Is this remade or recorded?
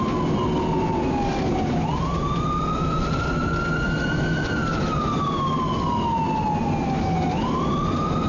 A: recorded